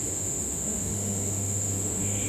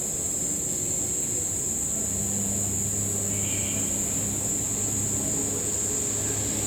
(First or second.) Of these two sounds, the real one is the second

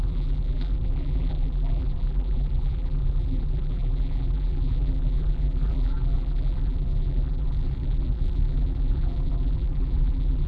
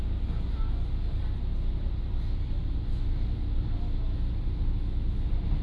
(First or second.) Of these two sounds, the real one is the second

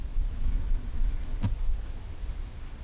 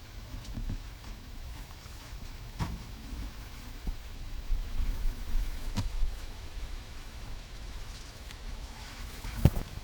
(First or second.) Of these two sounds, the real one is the first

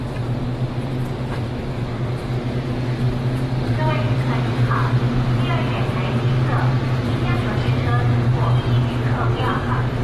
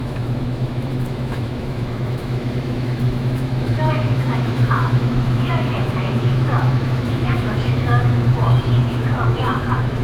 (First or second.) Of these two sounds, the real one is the first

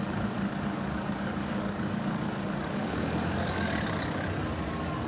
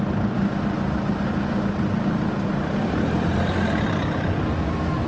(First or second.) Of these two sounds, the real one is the second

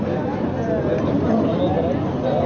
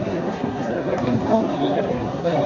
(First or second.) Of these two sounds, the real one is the first